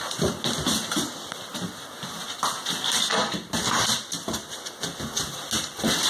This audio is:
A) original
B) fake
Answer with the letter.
A